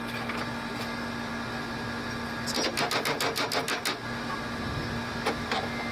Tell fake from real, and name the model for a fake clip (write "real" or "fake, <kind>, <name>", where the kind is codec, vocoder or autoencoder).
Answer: real